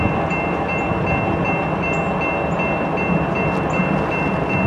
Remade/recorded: recorded